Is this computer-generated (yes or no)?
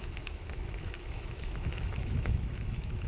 yes